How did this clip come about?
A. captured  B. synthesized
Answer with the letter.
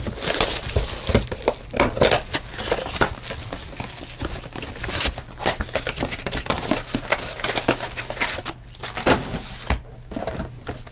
A